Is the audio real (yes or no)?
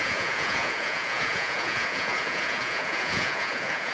no